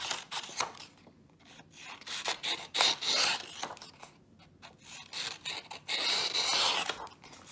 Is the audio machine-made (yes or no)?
no